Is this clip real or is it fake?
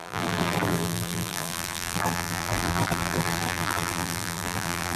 fake